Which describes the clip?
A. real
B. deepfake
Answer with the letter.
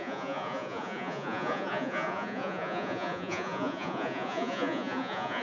B